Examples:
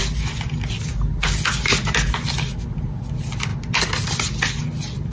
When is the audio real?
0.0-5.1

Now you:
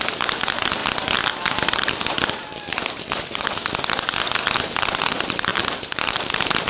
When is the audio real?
0.8-1.5; 3.6-4.9

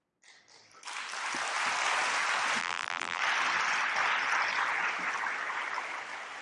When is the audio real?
0.0-2.6; 3.2-6.4

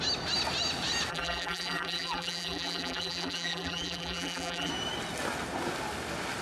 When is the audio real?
0.0-1.1; 4.7-6.4